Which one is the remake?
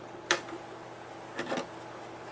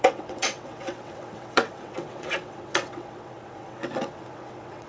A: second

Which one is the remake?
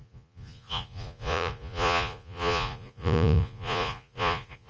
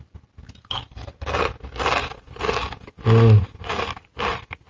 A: first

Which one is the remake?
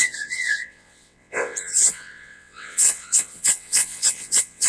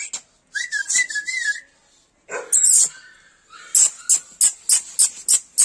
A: first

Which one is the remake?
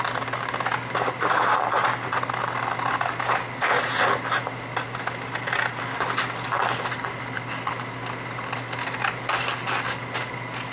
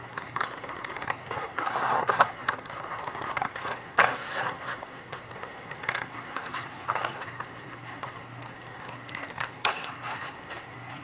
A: second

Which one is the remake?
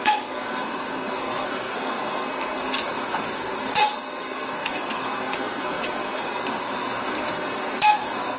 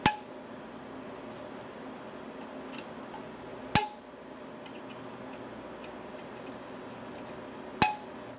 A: first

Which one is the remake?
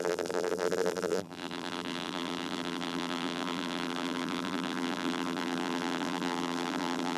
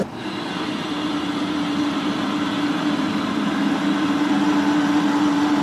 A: first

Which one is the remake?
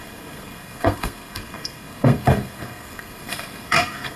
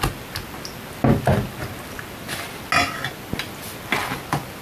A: first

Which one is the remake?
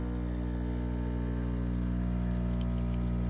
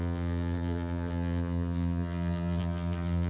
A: second